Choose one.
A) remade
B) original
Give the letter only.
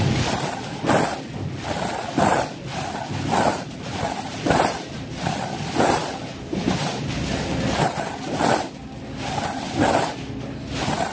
B